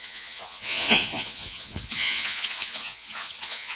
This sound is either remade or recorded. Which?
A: remade